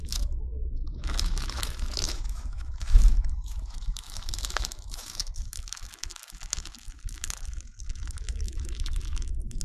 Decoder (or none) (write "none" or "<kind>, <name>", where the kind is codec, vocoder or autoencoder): autoencoder, DAC-VAE